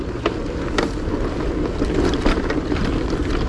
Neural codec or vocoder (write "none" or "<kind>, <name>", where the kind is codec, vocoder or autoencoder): none